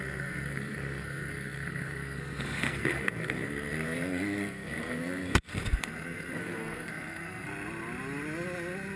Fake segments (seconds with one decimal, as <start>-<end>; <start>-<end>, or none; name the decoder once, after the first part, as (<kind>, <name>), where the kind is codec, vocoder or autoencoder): 0.0-7.5 (codec, SNAC)